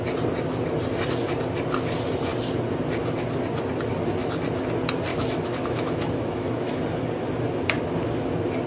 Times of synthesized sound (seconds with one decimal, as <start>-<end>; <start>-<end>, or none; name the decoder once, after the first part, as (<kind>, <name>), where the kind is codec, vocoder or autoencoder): 5.1-6.7 (autoencoder, DAC-VAE)